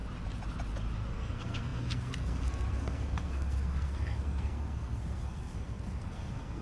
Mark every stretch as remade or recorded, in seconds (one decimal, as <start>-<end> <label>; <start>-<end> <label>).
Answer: 0.0-1.1 recorded; 1.1-6.6 remade